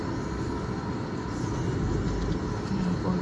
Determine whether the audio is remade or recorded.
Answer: recorded